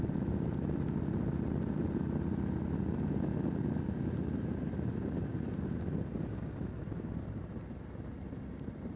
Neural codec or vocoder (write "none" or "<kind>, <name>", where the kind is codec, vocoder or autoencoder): none